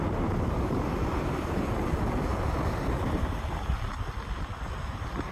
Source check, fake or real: real